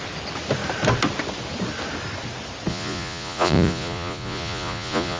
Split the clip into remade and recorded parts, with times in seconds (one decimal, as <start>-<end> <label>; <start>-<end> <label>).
0.0-2.7 recorded; 2.7-5.2 remade